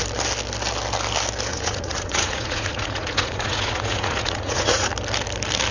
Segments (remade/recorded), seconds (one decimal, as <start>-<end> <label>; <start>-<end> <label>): 0.0-1.5 recorded; 1.5-4.9 remade; 4.9-5.7 recorded